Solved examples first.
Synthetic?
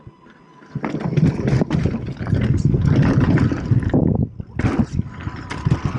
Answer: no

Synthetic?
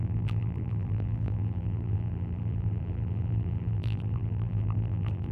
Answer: yes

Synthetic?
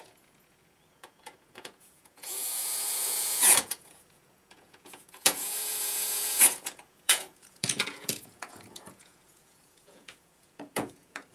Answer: yes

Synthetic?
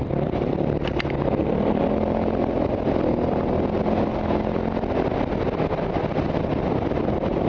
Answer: no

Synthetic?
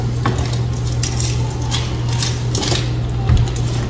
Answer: no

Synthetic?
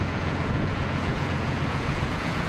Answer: yes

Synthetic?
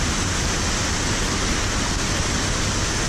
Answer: no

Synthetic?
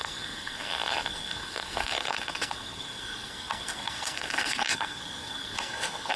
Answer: yes